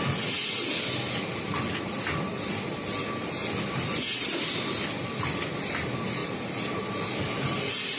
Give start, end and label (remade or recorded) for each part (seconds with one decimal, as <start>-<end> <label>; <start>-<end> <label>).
0.0-8.0 recorded